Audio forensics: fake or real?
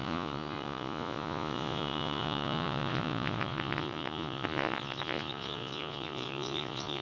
fake